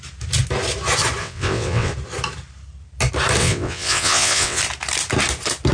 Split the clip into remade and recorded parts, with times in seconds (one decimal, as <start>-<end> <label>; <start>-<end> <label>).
0.0-1.2 recorded; 1.2-1.9 remade; 1.9-3.4 recorded; 3.4-4.6 remade; 4.6-5.7 recorded